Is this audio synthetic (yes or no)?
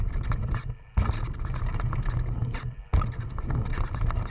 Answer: no